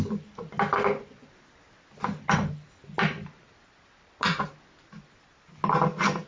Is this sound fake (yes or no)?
no